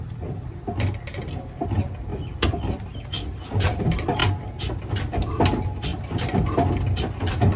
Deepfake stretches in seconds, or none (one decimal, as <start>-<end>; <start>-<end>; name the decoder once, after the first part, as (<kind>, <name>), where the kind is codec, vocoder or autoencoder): 0.0-4.2 (vocoder, BigVGAN v2); 4.9-5.9